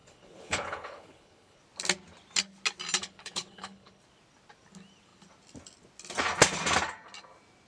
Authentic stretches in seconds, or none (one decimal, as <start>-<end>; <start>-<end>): 1.6-3.0; 4.0-7.7